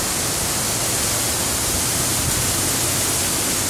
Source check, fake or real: real